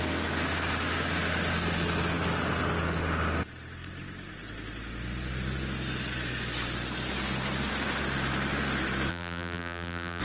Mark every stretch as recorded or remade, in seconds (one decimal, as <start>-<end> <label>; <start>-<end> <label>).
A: 0.0-9.1 recorded; 9.1-10.2 remade